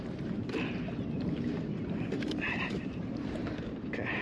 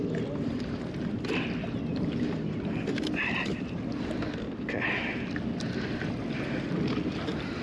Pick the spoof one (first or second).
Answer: first